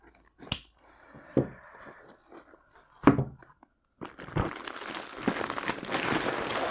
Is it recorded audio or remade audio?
recorded